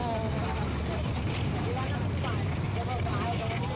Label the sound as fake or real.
real